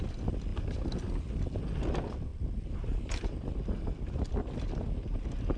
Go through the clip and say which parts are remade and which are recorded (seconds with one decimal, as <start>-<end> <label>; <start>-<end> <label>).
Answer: 0.0-5.6 recorded